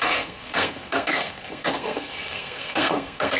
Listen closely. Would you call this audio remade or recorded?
remade